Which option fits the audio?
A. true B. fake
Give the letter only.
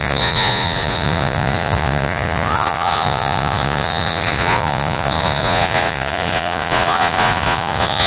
B